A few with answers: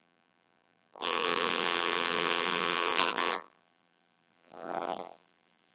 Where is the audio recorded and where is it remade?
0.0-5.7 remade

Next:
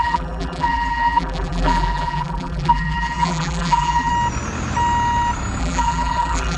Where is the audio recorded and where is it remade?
0.0-4.1 remade; 4.1-5.6 recorded; 5.6-6.6 remade

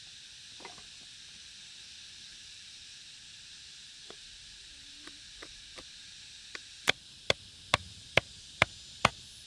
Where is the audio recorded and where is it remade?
0.0-2.3 recorded; 2.3-7.2 remade; 7.2-9.5 recorded

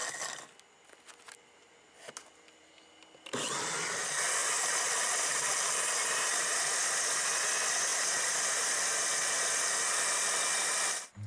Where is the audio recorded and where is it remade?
0.0-4.4 recorded; 4.4-6.6 remade; 6.6-7.9 recorded; 7.9-8.5 remade; 8.5-11.3 recorded

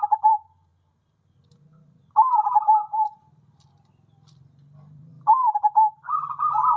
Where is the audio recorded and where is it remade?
0.0-0.7 remade; 0.7-2.8 recorded; 2.8-5.1 remade; 5.1-5.9 recorded; 5.9-6.8 remade